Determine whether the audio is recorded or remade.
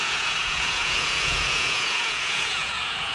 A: remade